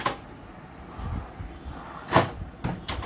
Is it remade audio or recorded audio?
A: recorded